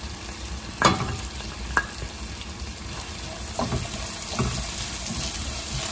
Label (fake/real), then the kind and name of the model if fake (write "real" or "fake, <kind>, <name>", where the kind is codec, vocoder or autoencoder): real